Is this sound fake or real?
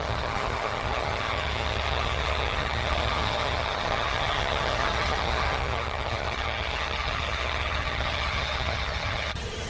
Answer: fake